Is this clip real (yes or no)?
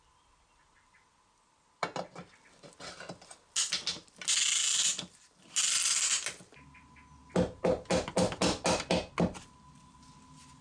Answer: yes